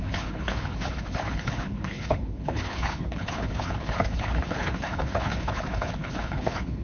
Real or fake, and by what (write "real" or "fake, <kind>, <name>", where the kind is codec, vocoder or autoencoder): fake, codec, HILCodec